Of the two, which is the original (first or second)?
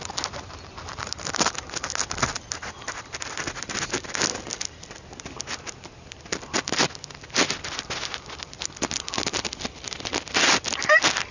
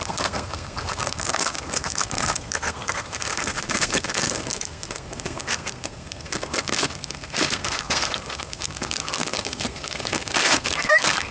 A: first